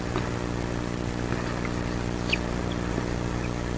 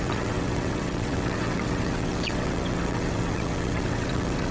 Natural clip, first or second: first